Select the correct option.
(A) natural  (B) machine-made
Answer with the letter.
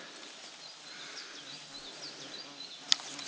A